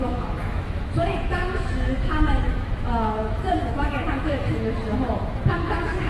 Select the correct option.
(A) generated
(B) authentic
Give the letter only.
A